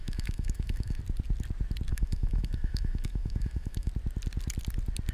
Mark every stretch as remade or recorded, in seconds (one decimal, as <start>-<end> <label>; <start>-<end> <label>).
0.0-1.0 remade; 1.0-1.9 recorded; 1.9-3.9 remade; 3.9-5.1 recorded